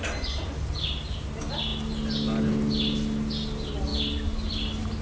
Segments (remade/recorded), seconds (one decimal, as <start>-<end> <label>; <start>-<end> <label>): 0.0-5.0 recorded